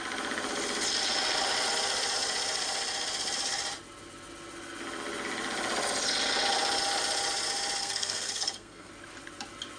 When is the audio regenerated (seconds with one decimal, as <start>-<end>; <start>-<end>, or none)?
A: 7.8-8.9